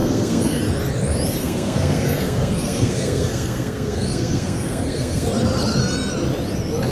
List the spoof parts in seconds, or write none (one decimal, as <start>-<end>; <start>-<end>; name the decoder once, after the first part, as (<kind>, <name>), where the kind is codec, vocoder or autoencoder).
0.0-0.6 (codec, SNAC); 1.4-5.3